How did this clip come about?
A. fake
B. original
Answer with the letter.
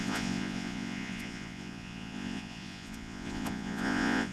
A